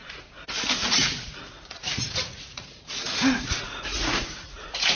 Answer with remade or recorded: remade